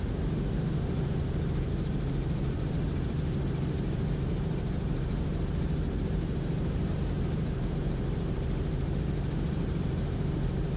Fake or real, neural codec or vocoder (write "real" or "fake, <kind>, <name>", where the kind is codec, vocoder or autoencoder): fake, vocoder, BigVGAN v2